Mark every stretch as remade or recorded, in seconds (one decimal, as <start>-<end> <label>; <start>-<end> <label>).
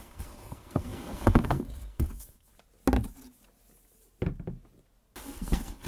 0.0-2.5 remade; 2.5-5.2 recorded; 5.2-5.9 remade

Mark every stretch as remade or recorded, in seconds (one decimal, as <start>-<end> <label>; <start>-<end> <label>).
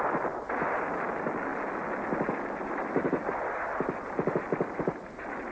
0.0-5.5 recorded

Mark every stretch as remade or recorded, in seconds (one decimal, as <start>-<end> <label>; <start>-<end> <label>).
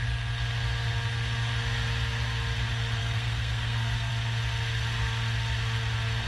0.0-3.0 recorded; 3.0-4.1 remade; 4.1-6.3 recorded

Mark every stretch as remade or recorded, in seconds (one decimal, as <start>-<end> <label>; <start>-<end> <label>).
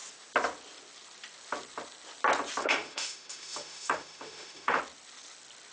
0.0-2.6 recorded; 2.6-4.8 remade; 4.8-5.7 recorded